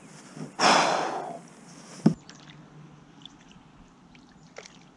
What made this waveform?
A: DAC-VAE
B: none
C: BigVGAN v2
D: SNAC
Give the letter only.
B